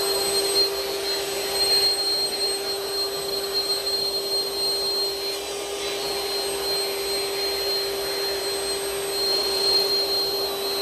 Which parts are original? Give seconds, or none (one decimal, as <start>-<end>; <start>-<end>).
0.0-9.3; 9.9-10.8